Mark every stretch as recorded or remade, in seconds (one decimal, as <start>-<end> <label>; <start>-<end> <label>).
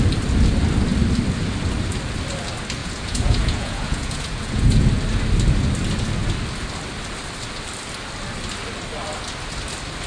0.0-2.8 recorded; 2.8-4.9 remade; 4.9-10.1 recorded